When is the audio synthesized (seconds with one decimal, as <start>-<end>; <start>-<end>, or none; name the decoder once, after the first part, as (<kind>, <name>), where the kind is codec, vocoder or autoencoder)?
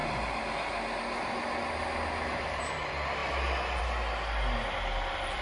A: none